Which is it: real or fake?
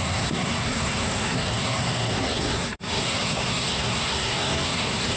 fake